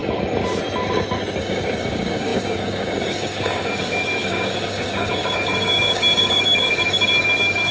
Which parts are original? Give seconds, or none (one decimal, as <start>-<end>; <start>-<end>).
0.0-1.4

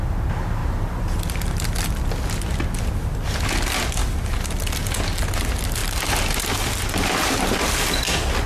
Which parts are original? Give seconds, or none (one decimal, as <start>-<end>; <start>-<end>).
0.0-8.5

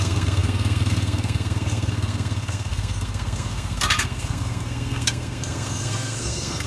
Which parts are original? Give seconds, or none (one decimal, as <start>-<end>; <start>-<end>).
none

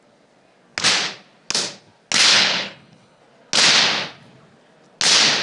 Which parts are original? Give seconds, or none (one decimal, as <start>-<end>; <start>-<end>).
0.0-2.3; 3.2-5.4

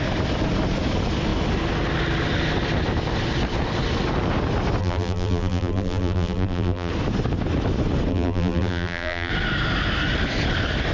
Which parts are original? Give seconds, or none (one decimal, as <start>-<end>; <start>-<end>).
0.0-4.8; 6.9-8.1; 9.3-10.9

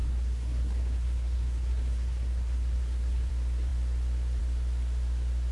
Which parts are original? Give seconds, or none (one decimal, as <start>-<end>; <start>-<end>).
3.3-5.5